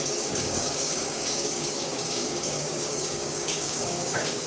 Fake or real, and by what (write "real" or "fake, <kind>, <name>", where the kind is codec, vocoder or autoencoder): fake, codec, DAC